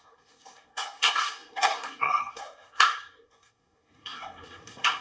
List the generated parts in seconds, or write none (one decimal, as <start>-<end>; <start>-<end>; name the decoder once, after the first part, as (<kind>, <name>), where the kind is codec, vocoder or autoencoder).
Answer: 0.0-5.0 (codec, SNAC)